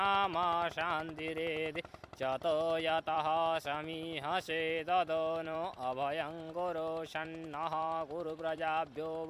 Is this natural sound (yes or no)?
no